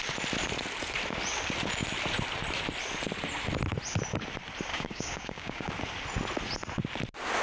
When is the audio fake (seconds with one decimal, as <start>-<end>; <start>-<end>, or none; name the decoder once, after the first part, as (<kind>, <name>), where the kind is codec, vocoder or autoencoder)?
4.7-5.7 (codec, DAC)